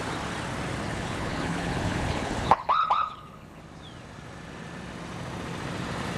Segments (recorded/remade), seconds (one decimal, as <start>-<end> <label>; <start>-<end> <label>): 0.0-0.9 recorded; 0.9-3.6 remade; 3.6-6.2 recorded